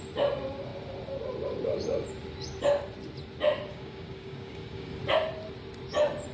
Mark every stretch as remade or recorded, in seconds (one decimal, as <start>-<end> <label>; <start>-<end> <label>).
0.0-3.7 recorded; 3.7-5.0 remade; 5.0-6.3 recorded